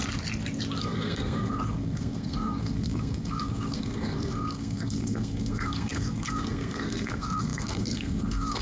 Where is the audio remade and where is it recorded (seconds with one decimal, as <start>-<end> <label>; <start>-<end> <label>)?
0.0-0.8 recorded; 0.8-8.6 remade